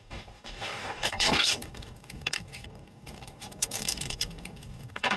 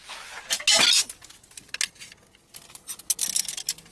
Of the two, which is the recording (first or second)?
second